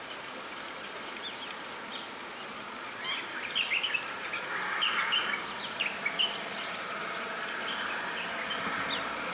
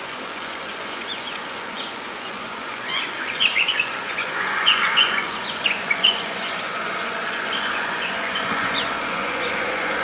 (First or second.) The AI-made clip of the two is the second